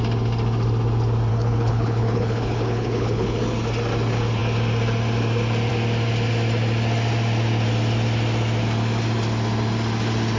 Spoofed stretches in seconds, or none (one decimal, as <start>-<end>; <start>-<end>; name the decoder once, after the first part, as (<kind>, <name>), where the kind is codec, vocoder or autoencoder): 1.3-3.4 (codec, HILCodec)